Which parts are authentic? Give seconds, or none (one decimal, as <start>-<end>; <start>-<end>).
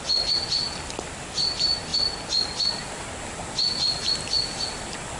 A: 0.0-5.2